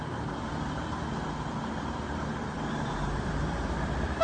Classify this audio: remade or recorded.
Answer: remade